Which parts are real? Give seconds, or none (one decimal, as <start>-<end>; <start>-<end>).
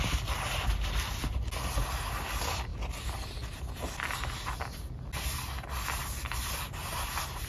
0.0-6.8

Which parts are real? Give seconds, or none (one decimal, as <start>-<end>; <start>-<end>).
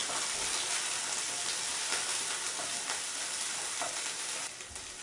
0.0-1.7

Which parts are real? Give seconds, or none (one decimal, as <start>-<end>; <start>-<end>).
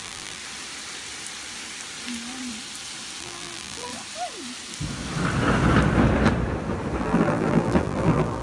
0.4-3.2; 3.9-7.0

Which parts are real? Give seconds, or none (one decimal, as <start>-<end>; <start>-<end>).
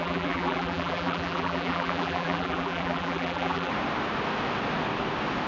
3.7-5.5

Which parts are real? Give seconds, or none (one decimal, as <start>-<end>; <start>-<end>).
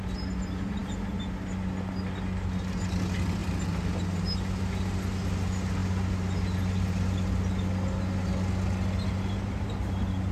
0.0-10.3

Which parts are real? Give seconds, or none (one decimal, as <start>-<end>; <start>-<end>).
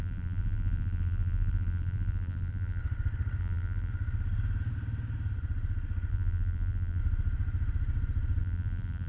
2.8-3.4; 3.9-6.1; 7.0-8.4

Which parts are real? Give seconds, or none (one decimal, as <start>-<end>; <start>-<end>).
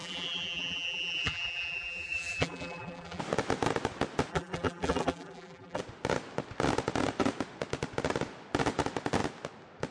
3.2-4.3; 5.8-9.9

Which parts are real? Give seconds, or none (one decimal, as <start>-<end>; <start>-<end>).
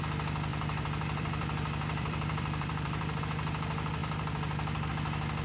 0.0-0.5; 3.2-4.0; 4.9-5.4